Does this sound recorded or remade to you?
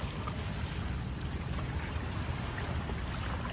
recorded